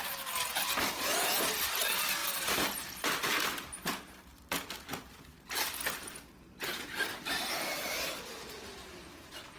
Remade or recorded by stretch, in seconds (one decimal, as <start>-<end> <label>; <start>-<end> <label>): 0.0-2.2 recorded; 2.2-2.9 remade; 2.9-4.3 recorded; 4.3-6.6 remade; 6.6-9.6 recorded